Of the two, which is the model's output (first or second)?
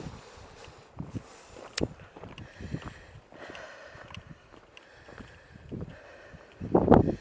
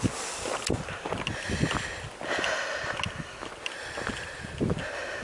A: first